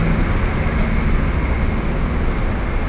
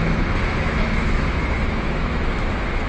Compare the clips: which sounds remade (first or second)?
second